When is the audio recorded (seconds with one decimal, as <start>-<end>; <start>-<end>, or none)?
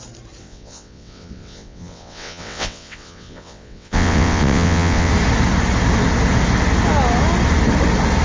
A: 0.0-0.4; 5.1-8.2